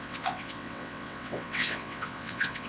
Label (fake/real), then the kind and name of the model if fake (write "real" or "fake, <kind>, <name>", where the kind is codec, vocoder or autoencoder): fake, vocoder, WaveNeXt